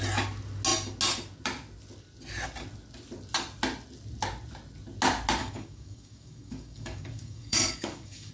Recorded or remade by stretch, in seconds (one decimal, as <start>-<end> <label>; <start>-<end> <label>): 0.0-5.4 recorded; 5.4-8.3 remade